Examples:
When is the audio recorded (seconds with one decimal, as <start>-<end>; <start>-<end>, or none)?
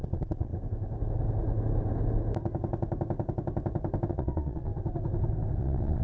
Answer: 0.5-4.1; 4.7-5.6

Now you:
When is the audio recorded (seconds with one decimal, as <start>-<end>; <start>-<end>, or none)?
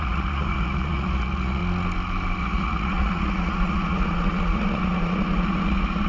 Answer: 1.6-2.4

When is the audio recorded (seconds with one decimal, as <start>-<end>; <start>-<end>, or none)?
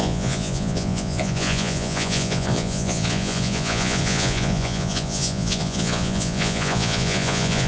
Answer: none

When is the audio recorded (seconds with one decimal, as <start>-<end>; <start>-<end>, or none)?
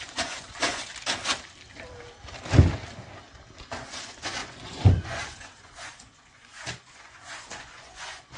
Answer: 0.9-3.6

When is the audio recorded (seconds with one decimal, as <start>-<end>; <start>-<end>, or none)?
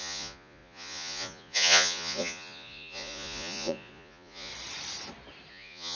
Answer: 4.5-5.5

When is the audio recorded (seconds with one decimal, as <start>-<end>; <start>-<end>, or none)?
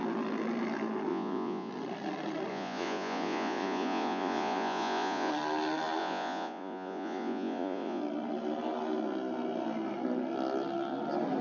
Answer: 0.0-1.1; 1.7-2.5; 5.3-6.0; 8.0-11.4